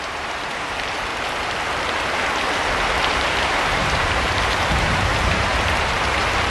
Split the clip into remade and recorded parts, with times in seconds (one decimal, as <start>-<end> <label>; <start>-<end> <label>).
0.0-1.1 remade; 1.1-3.2 recorded; 3.2-6.5 remade